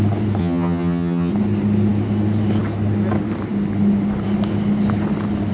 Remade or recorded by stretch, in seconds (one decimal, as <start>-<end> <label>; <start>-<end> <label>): 0.0-0.4 recorded; 0.4-1.3 remade; 1.3-5.5 recorded